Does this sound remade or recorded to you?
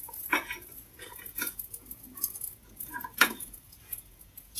remade